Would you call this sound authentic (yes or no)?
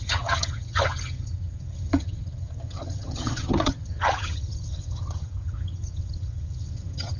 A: no